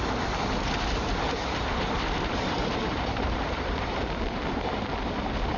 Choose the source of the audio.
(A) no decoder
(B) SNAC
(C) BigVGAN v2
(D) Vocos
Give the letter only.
A